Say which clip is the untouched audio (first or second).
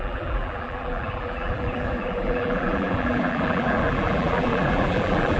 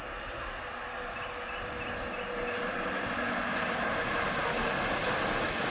second